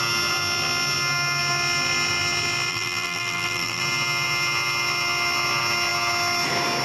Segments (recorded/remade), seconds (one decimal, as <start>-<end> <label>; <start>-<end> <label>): 0.0-2.7 recorded; 2.7-3.8 remade; 3.8-6.8 recorded